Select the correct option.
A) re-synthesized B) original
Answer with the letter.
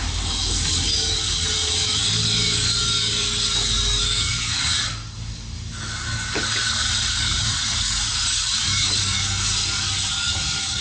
A